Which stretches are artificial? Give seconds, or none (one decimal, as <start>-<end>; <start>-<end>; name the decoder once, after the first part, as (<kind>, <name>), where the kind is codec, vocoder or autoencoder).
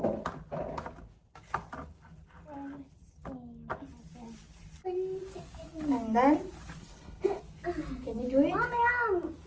6.8-7.4 (codec, HILCodec)